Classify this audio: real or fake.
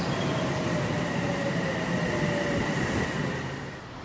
real